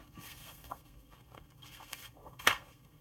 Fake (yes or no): yes